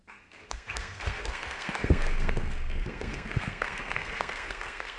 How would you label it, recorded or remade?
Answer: remade